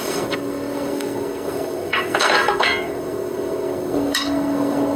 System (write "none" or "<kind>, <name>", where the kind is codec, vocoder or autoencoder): codec, SNAC